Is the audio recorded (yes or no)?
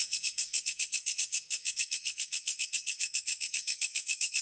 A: no